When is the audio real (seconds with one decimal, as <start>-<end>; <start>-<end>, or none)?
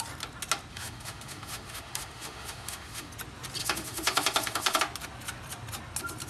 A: 0.0-0.7; 3.1-3.6; 4.8-6.3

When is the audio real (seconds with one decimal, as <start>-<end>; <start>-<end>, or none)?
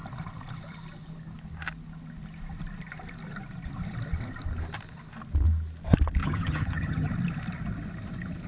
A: 0.0-6.2; 7.1-8.5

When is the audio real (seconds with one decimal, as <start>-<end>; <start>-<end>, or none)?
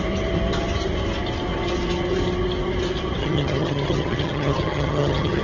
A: 0.0-3.2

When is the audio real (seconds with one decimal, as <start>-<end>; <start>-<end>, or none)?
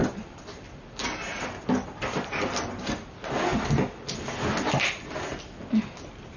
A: 0.0-6.4